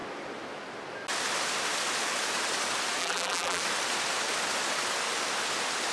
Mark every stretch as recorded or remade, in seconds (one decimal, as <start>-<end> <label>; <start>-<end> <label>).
0.0-3.0 recorded; 3.0-3.6 remade; 3.6-5.9 recorded